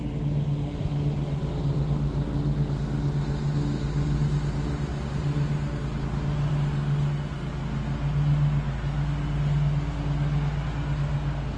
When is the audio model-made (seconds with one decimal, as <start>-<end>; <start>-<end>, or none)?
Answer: none